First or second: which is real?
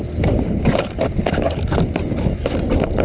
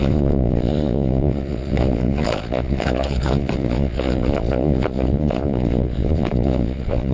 first